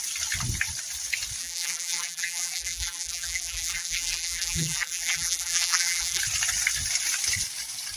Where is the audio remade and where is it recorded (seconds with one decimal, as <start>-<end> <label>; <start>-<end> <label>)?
0.0-1.4 recorded; 1.4-6.2 remade; 6.2-8.0 recorded